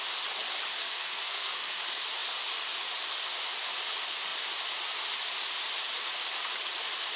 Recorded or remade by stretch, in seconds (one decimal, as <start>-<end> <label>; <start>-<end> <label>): 0.0-0.8 recorded; 0.8-1.8 remade; 1.8-7.2 recorded